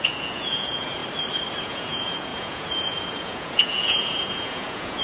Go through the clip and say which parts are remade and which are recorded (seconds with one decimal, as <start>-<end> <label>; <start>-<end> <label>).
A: 0.0-1.0 remade; 1.0-1.6 recorded; 1.6-5.0 remade